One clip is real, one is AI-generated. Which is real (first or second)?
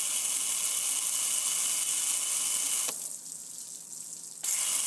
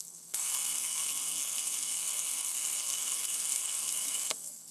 first